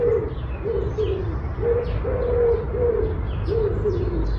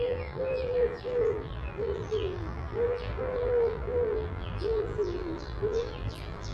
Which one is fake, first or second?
second